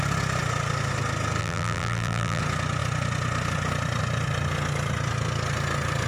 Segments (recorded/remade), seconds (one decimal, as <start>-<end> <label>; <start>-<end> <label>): 0.0-1.4 recorded; 1.4-2.4 remade; 2.4-6.1 recorded